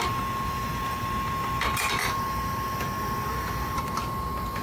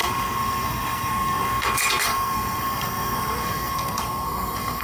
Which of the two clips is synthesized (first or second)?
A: second